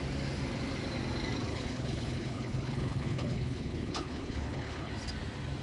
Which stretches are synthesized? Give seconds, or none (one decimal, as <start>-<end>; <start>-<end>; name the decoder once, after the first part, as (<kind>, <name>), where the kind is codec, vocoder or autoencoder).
1.5-4.9 (codec, HILCodec)